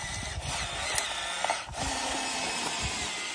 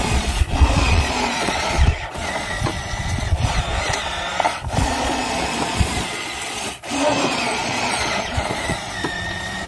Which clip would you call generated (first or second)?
second